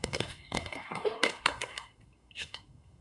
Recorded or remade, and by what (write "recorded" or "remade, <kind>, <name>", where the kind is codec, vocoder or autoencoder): remade, codec, SNAC